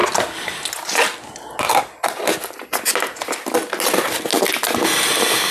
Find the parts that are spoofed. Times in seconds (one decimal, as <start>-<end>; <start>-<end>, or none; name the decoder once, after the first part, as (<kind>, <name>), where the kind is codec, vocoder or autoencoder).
none